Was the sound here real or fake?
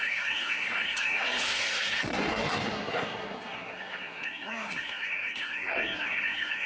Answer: fake